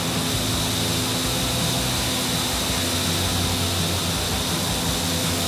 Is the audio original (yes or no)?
yes